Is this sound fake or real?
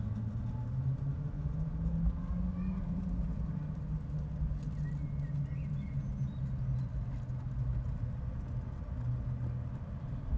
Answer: real